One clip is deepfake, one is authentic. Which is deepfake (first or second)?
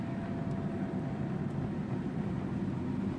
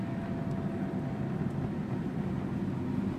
first